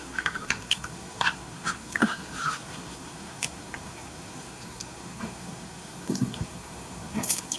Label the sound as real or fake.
fake